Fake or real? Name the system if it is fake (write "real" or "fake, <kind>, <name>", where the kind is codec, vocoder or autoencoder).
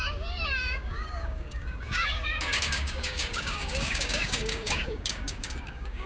fake, codec, DAC